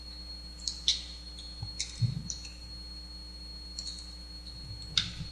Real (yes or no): yes